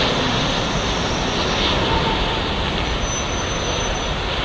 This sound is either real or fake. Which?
real